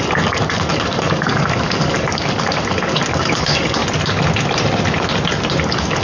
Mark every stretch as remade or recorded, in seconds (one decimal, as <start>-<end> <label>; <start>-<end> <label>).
0.0-3.8 remade; 3.8-5.6 recorded; 5.6-6.0 remade